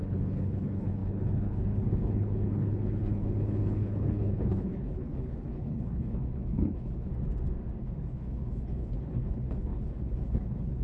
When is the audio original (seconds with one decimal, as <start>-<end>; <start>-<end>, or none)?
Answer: 7.1-7.8